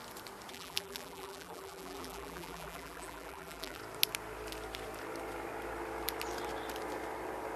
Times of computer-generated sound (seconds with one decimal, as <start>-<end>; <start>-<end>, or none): 0.5-3.8